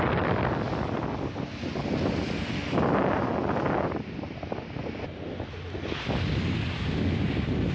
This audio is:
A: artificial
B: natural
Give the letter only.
B